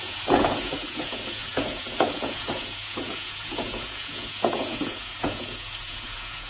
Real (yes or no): no